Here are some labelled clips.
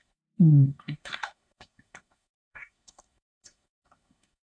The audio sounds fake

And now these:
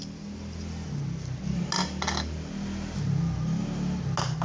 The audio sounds real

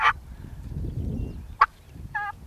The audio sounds real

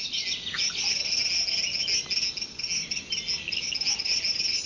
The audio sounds real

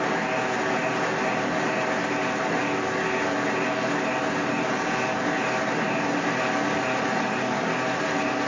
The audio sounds real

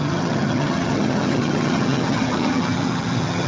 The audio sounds fake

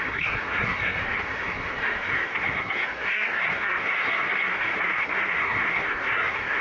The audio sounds fake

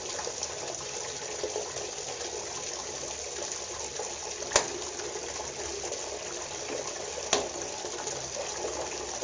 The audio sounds real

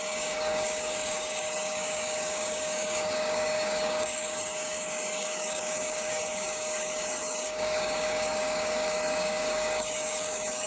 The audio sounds fake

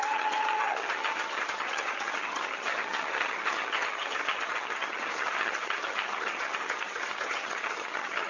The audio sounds fake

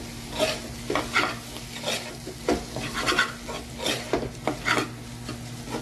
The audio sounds real